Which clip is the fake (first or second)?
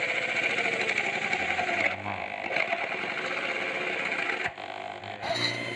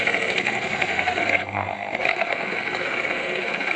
second